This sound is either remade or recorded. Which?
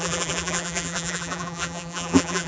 remade